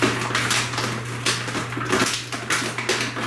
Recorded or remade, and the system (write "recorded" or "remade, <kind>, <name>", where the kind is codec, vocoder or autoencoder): recorded